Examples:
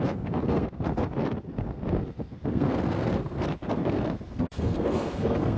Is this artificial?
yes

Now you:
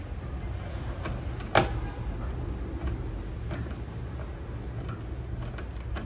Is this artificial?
no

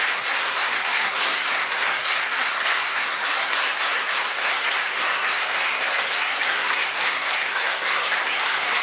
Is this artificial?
yes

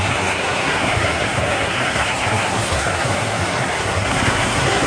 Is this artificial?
yes